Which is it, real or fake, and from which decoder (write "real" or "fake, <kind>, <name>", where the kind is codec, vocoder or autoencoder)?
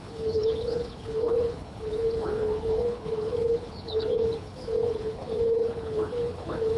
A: fake, codec, HILCodec